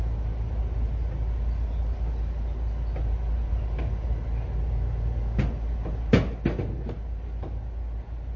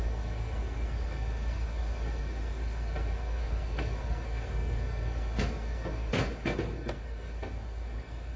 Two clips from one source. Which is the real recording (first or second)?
first